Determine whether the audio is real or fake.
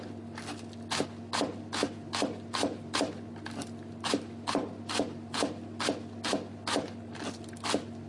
real